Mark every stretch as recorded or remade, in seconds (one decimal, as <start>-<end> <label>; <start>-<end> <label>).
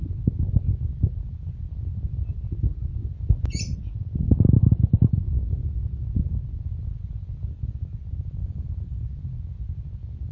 0.0-8.4 recorded; 8.4-9.0 remade; 9.0-10.3 recorded